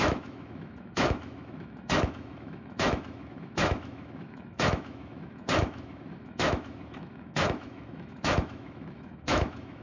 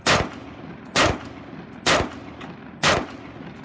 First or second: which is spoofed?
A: first